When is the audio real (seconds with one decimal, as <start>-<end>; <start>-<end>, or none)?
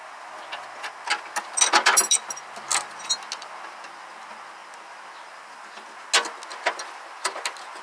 0.0-7.8